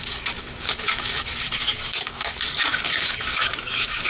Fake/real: fake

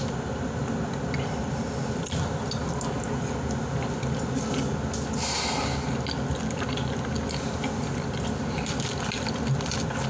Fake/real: real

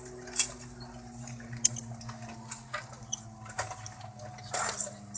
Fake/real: real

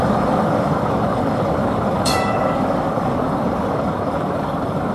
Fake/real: fake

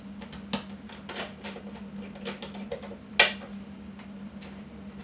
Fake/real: real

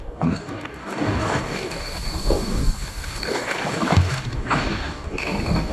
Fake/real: fake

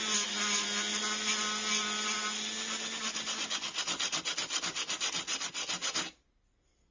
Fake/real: real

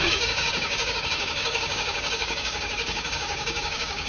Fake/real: fake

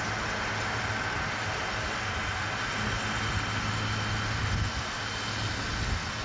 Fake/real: real